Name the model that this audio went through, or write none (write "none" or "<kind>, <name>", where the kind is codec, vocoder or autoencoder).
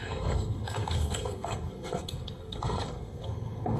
codec, SNAC